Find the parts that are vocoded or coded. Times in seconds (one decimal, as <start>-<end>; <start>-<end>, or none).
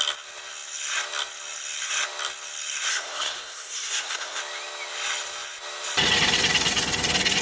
2.9-4.4